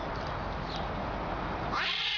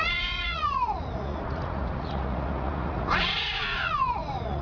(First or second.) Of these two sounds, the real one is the first